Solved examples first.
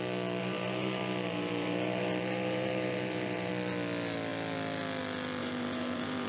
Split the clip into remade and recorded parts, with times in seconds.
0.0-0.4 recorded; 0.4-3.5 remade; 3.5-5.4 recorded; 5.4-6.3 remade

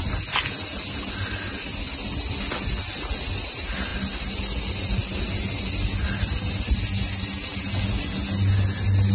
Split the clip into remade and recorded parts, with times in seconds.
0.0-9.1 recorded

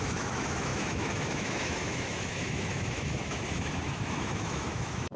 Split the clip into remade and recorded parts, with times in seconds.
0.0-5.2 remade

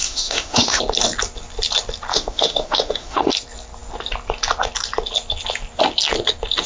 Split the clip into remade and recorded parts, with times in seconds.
0.0-0.8 remade; 0.8-2.1 recorded; 2.1-3.3 remade; 3.3-6.7 recorded

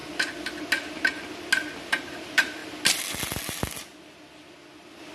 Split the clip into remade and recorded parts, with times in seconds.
0.0-5.1 recorded

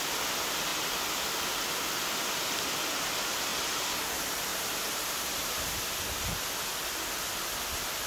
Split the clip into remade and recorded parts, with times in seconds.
0.0-4.5 recorded; 4.5-5.8 remade; 5.8-8.1 recorded

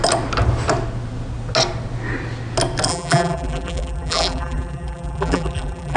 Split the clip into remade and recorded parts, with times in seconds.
0.0-2.9 recorded; 2.9-6.0 remade

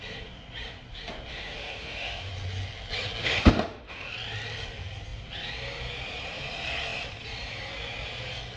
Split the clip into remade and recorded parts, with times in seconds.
0.0-1.3 recorded; 1.3-2.3 remade; 2.3-3.2 recorded; 3.2-4.1 remade; 4.1-8.6 recorded